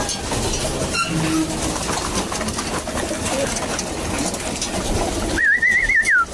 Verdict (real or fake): real